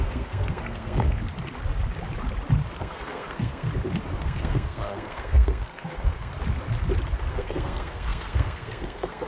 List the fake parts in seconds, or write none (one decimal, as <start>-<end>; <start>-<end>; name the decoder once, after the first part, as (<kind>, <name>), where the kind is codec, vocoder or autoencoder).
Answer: 0.0-1.2 (codec, SNAC); 2.8-3.7; 4.2-6.3; 7.3-9.3